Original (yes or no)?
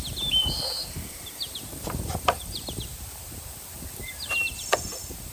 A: no